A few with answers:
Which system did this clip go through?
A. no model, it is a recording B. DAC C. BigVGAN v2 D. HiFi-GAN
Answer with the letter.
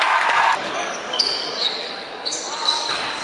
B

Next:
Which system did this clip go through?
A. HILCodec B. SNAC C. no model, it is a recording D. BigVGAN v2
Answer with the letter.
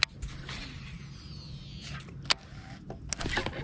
C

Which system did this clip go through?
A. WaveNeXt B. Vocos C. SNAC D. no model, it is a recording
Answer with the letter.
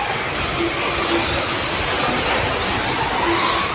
D